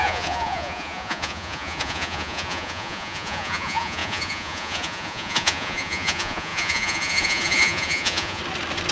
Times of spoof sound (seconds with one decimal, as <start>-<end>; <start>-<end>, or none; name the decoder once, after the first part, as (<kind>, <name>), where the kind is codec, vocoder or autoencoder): 0.0-8.4 (vocoder, Vocos)